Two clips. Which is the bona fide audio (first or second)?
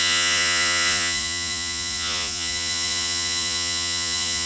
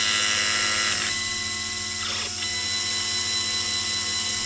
second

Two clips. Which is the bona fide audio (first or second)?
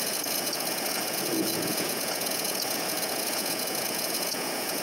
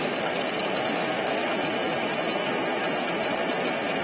second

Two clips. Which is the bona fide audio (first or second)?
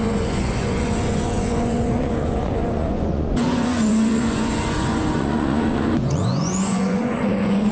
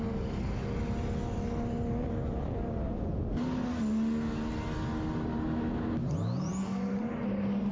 second